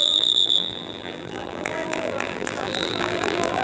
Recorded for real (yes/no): no